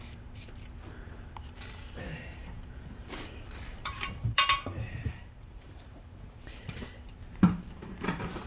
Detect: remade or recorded remade